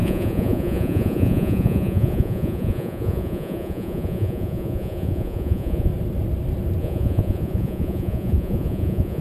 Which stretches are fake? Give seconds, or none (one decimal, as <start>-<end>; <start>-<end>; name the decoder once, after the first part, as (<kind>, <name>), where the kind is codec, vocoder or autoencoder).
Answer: 0.0-5.9 (vocoder, Vocos); 6.8-9.2